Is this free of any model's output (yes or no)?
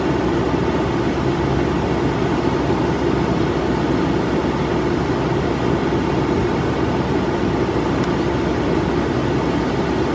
yes